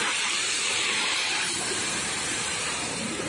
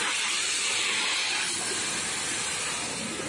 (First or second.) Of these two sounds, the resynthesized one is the first